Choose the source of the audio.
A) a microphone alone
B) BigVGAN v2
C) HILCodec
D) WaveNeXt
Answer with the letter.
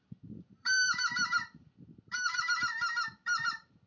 B